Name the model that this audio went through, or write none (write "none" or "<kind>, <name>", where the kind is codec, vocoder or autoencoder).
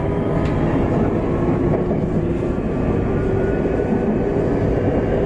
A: none